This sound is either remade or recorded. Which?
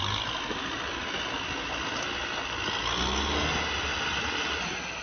recorded